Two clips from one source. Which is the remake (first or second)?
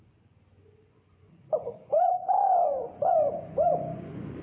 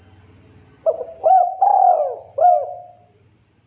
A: first